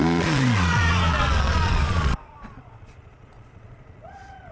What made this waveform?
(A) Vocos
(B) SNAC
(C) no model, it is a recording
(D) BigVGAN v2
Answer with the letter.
A